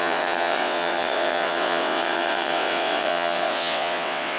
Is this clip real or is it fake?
fake